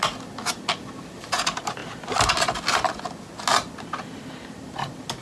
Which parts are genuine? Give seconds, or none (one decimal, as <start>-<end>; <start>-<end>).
0.0-5.2